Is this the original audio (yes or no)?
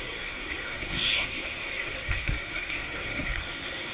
no